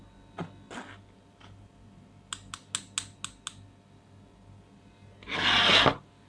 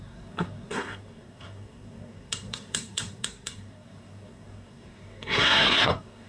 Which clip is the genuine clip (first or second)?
first